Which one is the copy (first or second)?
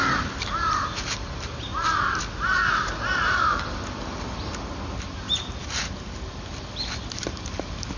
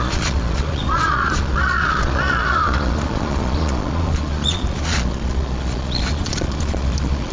second